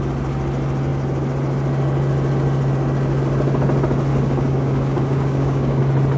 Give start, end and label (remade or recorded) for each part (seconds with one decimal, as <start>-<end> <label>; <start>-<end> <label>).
0.0-4.1 recorded; 4.1-5.8 remade; 5.8-6.2 recorded